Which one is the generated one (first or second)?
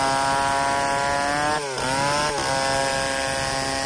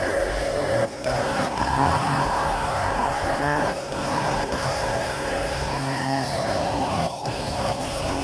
second